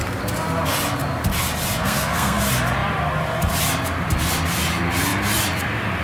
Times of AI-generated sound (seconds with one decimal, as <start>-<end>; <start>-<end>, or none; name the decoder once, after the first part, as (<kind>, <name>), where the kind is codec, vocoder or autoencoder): 1.8-2.4 (codec, SNAC)